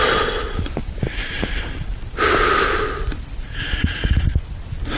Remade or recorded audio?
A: recorded